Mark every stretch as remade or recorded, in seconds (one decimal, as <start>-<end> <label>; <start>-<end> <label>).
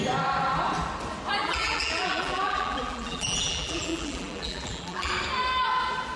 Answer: 0.0-1.4 recorded; 1.4-5.1 remade; 5.1-6.2 recorded